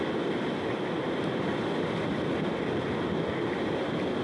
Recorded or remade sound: recorded